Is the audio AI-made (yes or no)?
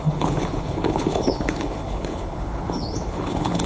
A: yes